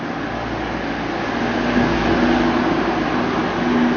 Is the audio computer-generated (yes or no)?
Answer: no